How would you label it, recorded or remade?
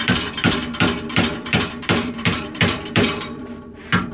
remade